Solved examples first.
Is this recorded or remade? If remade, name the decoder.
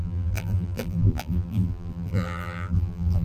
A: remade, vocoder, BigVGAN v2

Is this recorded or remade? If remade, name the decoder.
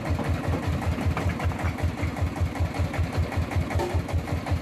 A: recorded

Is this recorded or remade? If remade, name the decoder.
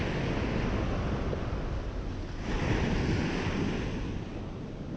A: recorded